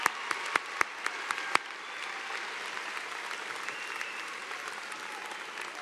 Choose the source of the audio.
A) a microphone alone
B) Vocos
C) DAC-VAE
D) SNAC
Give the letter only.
A